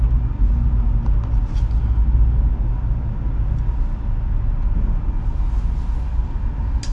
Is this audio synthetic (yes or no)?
no